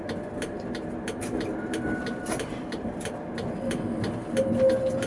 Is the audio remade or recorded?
recorded